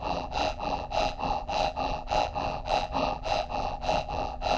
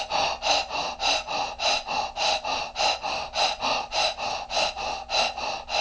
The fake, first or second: first